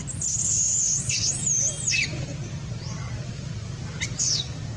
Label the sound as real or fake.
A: real